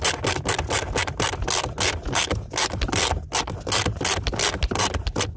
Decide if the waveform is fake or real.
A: real